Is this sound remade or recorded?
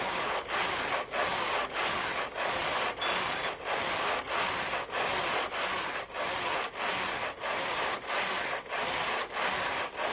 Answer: remade